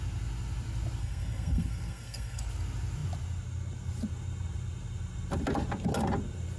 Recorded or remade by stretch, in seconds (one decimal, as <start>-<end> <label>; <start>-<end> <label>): 0.0-1.0 recorded; 1.0-2.4 remade; 2.4-6.6 recorded